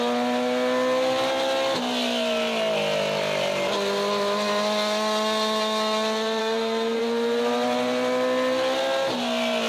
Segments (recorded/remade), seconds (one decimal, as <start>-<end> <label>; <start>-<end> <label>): 0.0-6.4 recorded; 6.4-7.0 remade; 7.0-9.7 recorded